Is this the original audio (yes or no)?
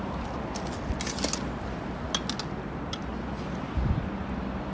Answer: yes